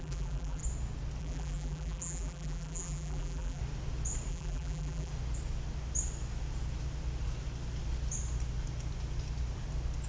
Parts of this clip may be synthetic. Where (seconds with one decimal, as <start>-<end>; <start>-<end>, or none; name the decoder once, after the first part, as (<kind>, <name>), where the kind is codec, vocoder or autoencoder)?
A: 0.0-0.6 (vocoder, BigVGAN v2); 1.2-3.6; 4.3-5.1